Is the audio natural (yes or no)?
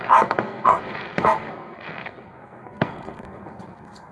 no